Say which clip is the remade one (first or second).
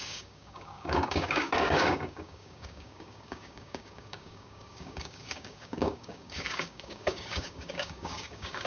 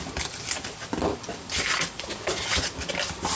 first